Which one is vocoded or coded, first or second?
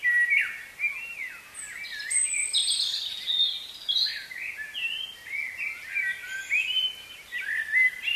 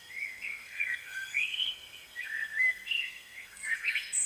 second